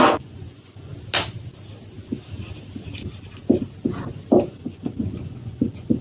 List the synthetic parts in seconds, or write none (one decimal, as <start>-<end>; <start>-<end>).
0.0-0.9; 4.5-6.0